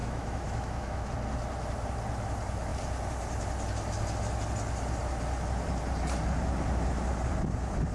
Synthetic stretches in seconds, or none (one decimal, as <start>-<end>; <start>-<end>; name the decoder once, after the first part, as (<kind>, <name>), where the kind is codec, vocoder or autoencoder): 0.0-1.1 (autoencoder, DAC-VAE)